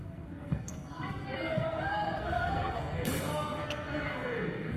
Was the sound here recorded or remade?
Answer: remade